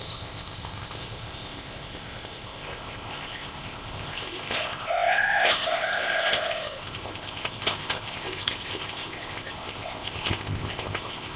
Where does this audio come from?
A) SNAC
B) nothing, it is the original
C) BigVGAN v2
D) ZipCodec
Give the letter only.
D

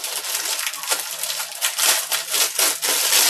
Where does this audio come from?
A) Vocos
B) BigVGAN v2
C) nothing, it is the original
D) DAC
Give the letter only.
C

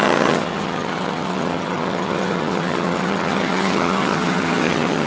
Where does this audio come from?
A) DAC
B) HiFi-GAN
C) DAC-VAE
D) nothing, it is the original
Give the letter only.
B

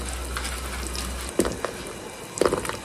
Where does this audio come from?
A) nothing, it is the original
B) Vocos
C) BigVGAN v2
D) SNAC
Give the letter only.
A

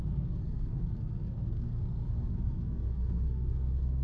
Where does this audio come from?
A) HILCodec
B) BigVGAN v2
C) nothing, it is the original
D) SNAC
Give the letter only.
D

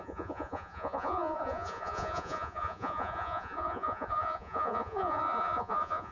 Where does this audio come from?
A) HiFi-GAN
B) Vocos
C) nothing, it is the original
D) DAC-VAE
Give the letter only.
B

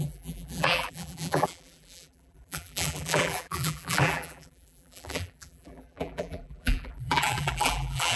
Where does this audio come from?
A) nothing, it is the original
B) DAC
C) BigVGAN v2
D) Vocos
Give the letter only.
C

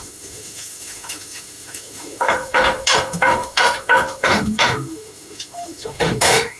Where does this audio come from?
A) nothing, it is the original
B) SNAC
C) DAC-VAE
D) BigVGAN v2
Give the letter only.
C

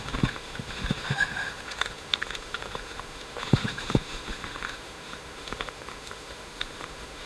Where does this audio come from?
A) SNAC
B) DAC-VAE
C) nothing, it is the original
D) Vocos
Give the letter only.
B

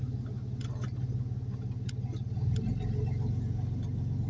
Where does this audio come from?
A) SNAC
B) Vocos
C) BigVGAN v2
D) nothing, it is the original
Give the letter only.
D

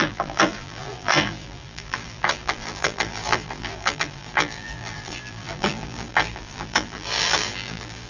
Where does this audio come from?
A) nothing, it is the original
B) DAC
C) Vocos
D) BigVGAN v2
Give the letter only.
D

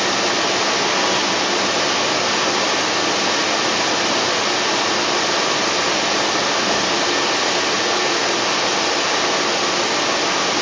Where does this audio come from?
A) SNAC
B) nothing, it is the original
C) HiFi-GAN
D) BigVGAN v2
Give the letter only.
B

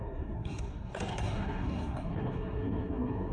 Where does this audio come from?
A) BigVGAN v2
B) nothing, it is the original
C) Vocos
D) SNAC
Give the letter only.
D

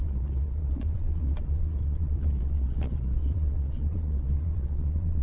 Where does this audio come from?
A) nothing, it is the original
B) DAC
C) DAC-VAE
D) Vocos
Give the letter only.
D